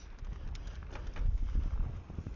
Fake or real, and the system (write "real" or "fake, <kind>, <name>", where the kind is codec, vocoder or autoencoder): real